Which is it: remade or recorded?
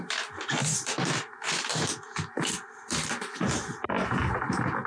recorded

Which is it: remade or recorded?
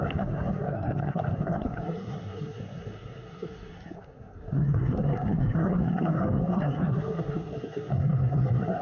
remade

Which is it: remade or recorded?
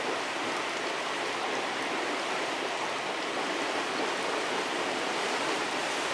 recorded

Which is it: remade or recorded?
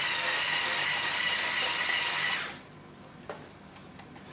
recorded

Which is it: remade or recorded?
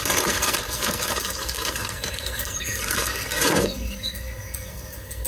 remade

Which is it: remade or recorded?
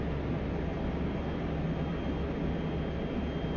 recorded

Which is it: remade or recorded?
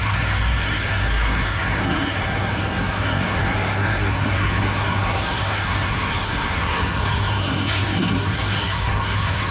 remade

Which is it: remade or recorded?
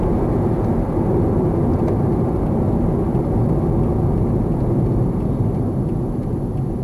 recorded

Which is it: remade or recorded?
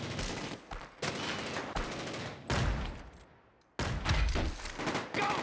recorded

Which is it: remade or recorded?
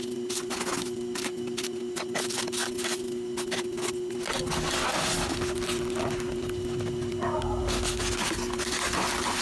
recorded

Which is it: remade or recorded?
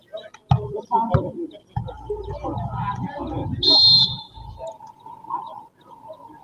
recorded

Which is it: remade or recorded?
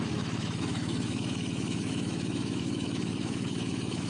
remade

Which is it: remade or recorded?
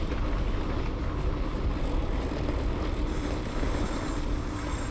recorded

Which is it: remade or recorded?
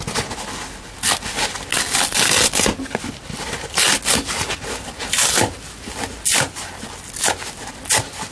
recorded